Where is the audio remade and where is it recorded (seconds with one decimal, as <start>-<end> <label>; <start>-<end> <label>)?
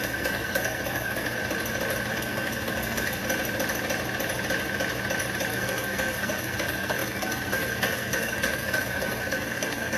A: 0.0-1.4 remade; 1.4-2.1 recorded; 2.1-3.2 remade; 3.2-5.5 recorded; 5.5-10.0 remade